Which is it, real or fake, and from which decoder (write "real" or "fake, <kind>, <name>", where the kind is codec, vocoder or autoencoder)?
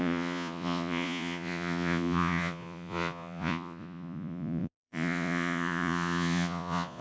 fake, vocoder, Vocos